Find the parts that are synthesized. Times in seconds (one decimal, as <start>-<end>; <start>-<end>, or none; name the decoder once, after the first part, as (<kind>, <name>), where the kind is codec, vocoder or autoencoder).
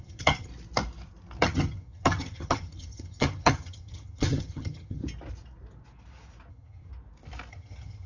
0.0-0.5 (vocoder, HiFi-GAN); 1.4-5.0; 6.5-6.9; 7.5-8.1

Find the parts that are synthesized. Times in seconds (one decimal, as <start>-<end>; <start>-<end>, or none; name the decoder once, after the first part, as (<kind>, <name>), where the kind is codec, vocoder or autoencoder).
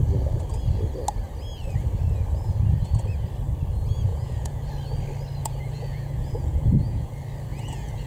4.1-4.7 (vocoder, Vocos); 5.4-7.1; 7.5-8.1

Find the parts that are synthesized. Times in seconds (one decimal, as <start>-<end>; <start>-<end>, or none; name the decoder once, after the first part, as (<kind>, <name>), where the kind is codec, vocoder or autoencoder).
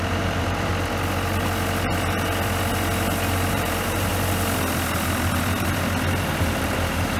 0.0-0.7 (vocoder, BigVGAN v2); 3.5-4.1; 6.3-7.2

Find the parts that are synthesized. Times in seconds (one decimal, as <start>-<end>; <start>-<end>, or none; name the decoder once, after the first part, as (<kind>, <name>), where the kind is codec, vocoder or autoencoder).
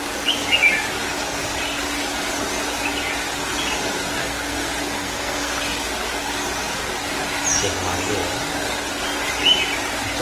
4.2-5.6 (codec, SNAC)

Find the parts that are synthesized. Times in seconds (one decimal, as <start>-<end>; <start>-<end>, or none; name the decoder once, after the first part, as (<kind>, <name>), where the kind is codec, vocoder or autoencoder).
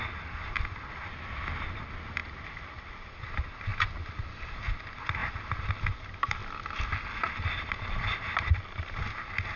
3.7-4.6 (vocoder, BigVGAN v2); 6.4-8.5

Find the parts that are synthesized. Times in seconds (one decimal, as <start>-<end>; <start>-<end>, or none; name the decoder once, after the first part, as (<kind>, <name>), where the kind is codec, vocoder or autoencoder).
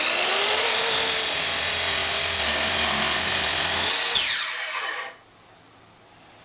none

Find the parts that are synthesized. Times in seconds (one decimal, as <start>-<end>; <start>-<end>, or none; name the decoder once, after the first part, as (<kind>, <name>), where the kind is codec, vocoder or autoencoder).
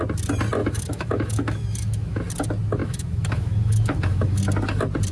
0.6-2.2 (autoencoder, DAC-VAE); 2.8-4.4